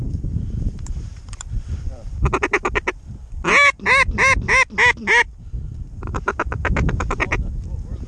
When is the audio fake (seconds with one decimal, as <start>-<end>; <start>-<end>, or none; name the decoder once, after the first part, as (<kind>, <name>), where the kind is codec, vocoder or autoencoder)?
0.0-2.1 (vocoder, BigVGAN v2)